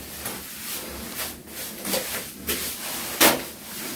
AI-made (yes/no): no